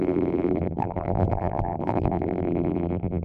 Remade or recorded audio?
remade